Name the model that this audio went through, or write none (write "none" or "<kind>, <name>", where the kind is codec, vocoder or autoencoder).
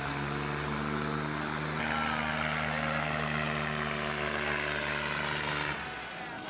none